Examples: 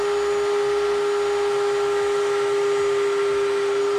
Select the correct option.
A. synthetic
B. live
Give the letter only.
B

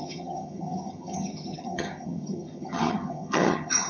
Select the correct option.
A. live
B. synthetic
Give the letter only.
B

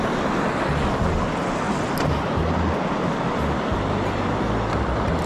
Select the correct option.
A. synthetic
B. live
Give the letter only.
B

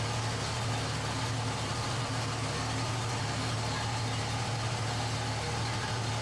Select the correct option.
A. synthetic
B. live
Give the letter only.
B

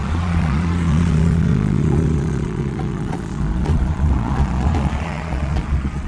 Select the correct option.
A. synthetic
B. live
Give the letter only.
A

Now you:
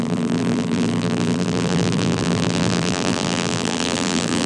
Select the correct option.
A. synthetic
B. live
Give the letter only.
A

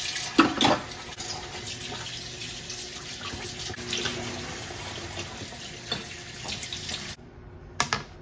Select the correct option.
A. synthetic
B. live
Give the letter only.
B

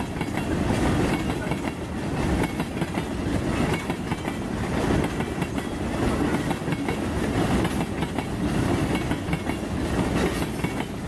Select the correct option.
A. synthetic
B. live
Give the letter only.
B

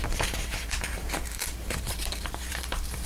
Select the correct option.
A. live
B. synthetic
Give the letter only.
B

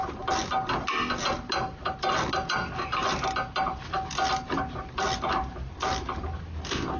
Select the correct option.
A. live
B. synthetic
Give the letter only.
A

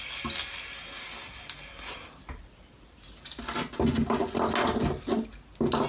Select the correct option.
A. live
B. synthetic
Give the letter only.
A